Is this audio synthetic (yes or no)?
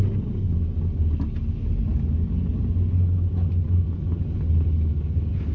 no